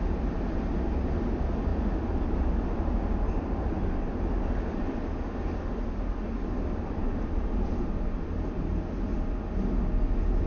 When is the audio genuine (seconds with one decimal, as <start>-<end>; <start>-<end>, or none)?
0.0-10.5